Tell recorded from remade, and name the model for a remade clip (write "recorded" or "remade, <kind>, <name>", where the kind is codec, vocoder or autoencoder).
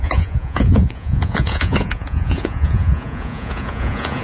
remade, vocoder, Vocos